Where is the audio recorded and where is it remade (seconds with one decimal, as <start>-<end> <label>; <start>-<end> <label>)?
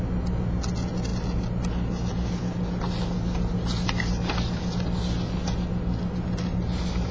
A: 0.0-7.1 recorded